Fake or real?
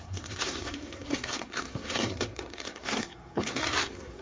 fake